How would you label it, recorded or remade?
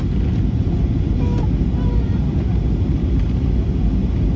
recorded